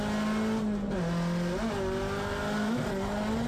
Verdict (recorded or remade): recorded